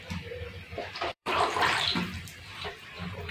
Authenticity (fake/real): fake